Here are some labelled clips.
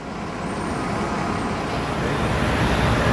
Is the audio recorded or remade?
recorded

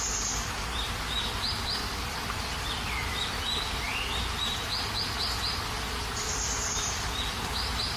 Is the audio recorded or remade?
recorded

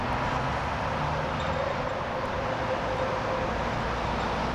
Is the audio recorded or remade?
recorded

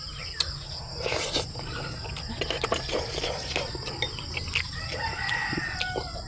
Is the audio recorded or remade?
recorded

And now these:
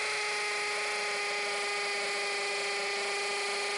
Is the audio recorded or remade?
recorded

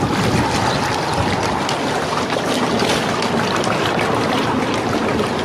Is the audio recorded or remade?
recorded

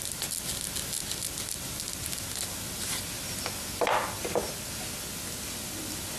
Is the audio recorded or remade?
recorded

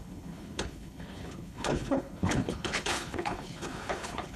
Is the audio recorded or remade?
remade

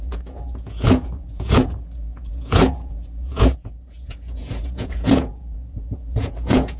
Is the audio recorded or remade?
remade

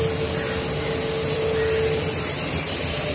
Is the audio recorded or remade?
recorded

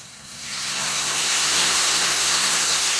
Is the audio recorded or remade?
remade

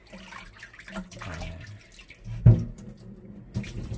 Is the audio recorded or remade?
recorded